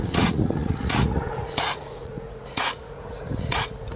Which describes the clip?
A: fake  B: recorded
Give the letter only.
A